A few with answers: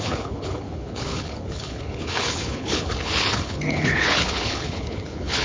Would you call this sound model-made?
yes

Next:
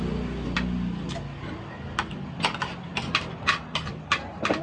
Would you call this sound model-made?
no